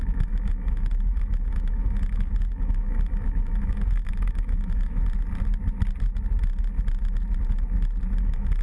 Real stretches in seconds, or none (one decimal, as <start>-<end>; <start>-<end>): 5.0-8.2